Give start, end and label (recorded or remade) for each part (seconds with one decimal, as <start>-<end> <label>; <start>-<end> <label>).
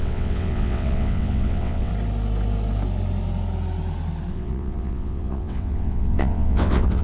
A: 0.0-1.9 remade; 1.9-4.3 recorded; 4.3-7.0 remade